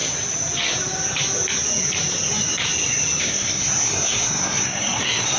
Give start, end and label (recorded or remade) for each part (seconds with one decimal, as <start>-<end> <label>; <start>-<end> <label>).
0.0-3.2 recorded; 3.2-5.4 remade